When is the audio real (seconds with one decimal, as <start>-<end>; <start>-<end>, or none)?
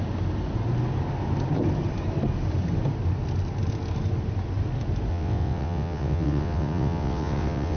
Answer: 0.0-5.1